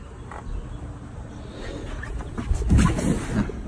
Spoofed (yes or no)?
no